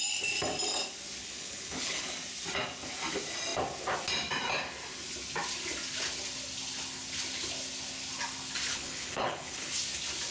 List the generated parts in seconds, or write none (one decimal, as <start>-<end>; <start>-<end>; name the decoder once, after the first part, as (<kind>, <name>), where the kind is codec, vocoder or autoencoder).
1.2-2.1 (codec, HILCodec); 8.7-9.7